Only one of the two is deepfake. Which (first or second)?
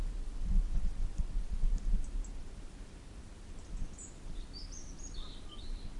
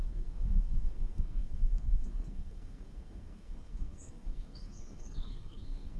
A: second